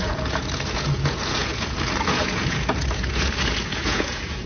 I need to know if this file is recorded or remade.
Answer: remade